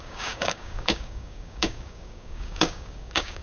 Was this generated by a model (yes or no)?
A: yes